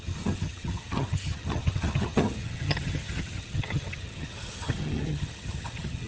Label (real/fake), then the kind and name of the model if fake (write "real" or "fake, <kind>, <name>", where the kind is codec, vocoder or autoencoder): fake, vocoder, HiFi-GAN